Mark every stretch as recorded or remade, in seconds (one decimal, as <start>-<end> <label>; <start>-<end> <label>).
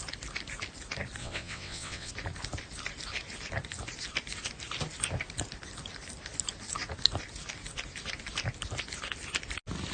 0.0-1.2 recorded; 1.2-2.1 remade; 2.1-9.9 recorded